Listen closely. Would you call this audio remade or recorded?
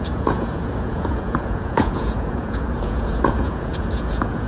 remade